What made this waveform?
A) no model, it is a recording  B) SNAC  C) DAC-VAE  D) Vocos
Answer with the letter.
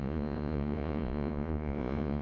D